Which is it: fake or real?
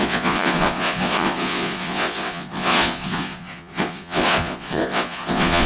fake